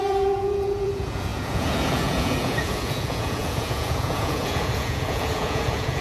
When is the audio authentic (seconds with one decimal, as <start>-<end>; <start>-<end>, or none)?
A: none